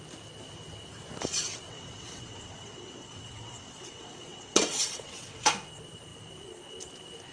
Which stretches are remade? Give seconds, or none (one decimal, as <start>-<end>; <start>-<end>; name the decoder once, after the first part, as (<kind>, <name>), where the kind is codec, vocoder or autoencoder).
1.7-5.5 (vocoder, WaveNeXt)